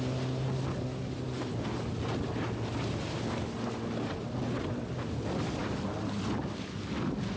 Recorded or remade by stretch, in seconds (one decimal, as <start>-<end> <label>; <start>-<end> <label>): 0.0-7.4 recorded